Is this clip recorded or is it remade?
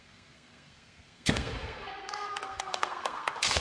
remade